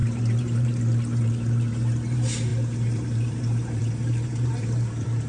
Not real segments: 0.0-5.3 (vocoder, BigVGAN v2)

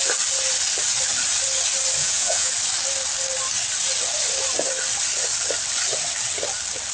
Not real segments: 2.0-2.5 (vocoder, Vocos)